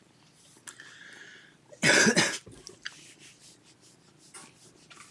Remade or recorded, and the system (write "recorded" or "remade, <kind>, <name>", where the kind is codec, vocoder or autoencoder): recorded